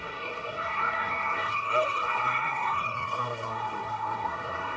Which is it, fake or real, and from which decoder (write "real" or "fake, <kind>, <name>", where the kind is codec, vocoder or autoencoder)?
fake, codec, SNAC